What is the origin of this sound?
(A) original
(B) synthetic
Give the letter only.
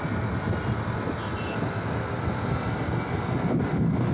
A